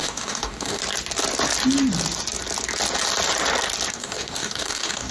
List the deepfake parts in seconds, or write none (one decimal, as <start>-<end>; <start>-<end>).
0.0-0.8; 3.9-5.1